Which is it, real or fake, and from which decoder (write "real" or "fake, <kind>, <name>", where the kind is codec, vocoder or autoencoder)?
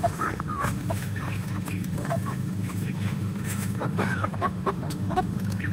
fake, autoencoder, DAC-VAE